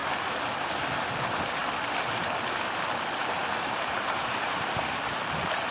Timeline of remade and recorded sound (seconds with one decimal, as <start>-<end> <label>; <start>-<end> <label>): 0.0-3.2 recorded; 3.2-4.7 remade; 4.7-5.7 recorded